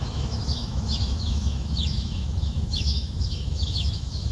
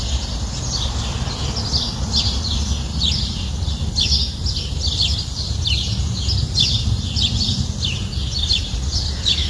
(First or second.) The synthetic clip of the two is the first